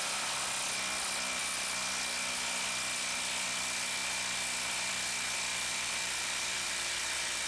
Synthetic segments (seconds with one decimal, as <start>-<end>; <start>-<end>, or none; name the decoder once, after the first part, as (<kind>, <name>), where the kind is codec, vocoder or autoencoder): 5.5-7.5 (vocoder, BigVGAN v2)